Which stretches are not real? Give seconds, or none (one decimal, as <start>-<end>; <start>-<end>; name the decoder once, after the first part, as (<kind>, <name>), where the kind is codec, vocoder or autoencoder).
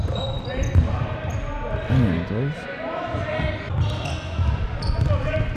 none